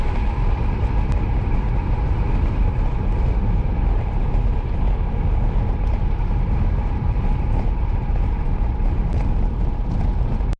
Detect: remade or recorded recorded